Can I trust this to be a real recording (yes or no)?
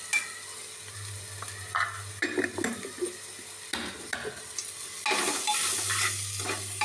yes